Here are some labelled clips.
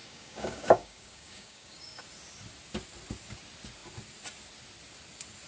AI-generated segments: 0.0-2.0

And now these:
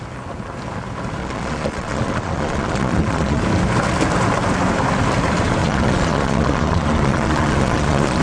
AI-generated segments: 1.2-3.4; 5.6-8.2